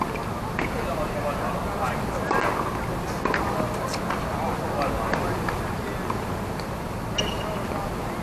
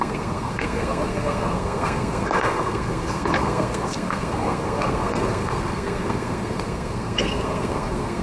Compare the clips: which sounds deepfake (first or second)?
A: second